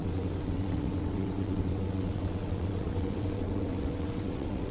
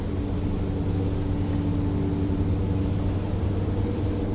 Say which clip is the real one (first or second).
second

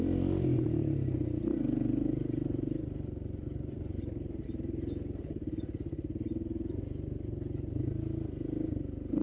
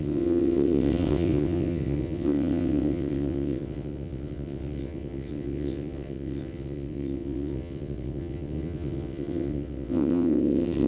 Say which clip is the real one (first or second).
first